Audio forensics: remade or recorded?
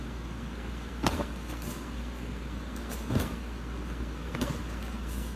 remade